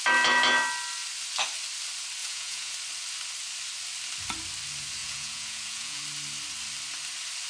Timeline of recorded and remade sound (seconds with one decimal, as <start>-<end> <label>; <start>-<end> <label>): 0.0-2.2 recorded; 2.2-2.7 remade; 2.7-5.0 recorded; 5.0-6.0 remade; 6.0-7.5 recorded